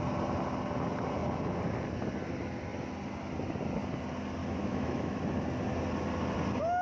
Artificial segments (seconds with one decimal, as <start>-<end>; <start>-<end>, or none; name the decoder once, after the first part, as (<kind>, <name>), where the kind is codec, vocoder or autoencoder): 4.4-5.2 (autoencoder, DAC-VAE)